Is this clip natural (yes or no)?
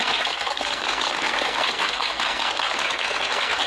no